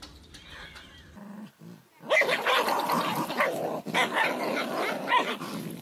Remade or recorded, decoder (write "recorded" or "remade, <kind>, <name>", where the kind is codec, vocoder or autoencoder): recorded